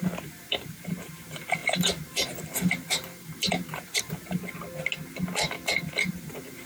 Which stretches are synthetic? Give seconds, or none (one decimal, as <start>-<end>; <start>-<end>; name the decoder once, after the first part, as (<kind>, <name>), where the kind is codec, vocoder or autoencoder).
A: 0.0-4.4 (vocoder, BigVGAN v2); 6.1-6.7